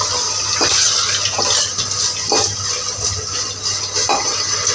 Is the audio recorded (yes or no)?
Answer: yes